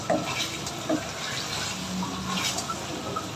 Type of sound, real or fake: real